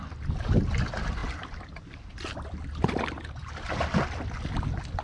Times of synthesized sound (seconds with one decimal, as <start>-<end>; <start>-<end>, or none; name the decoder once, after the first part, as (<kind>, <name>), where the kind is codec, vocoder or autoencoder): 1.2-1.8 (vocoder, BigVGAN v2); 2.3-3.2